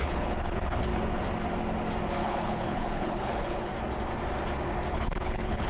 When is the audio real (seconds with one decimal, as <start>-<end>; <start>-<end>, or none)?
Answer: 0.9-2.2; 3.7-4.9